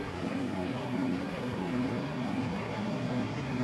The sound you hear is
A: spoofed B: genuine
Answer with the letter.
A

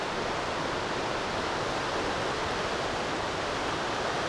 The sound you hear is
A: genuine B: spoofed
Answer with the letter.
A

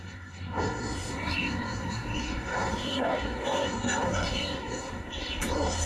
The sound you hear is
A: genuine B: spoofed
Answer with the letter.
B